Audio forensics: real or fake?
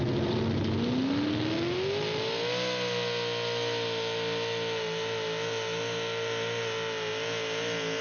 real